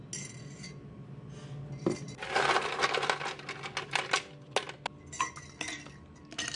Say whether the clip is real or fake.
real